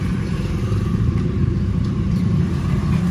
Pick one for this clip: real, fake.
fake